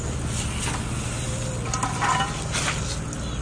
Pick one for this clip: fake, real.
real